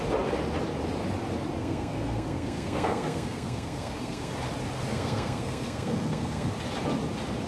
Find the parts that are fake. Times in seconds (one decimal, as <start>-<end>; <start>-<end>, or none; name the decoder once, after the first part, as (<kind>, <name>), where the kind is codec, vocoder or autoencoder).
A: 1.6-4.3 (codec, SNAC); 4.9-6.5